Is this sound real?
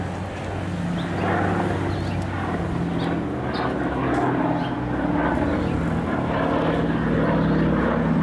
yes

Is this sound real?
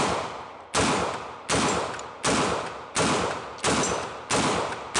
yes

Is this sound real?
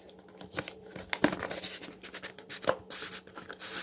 yes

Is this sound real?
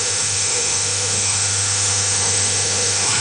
no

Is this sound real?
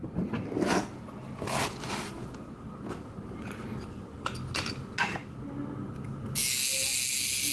yes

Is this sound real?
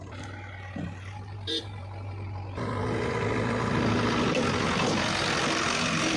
yes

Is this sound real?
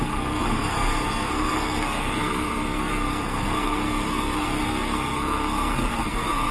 no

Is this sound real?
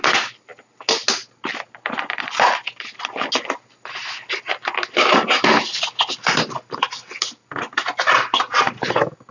yes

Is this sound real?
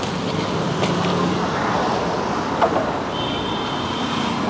yes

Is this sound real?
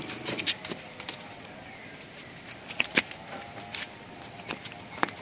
no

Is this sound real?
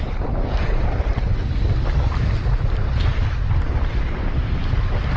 yes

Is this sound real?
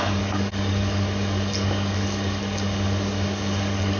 no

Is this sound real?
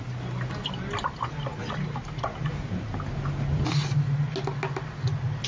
yes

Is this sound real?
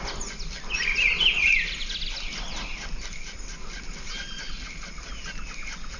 yes